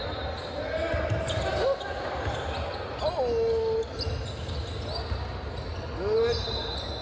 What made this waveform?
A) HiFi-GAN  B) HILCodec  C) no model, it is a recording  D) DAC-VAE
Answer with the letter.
C